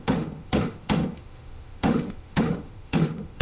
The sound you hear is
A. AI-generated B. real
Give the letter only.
A